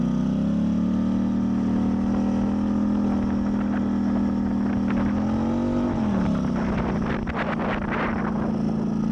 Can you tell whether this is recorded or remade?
recorded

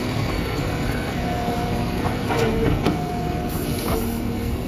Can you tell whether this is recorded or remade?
remade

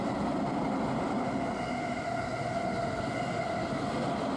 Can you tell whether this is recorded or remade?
recorded